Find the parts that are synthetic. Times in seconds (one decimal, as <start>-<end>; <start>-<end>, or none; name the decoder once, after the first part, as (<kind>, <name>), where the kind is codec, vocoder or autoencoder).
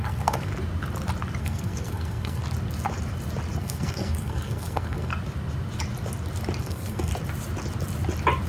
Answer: 0.0-0.5 (codec, SNAC); 1.4-2.4; 3.6-5.1; 6.6-7.1